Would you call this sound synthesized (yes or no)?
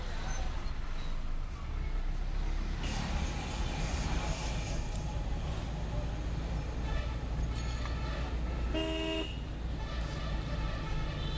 no